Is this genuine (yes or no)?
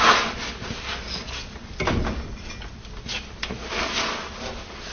yes